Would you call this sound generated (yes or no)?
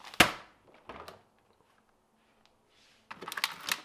no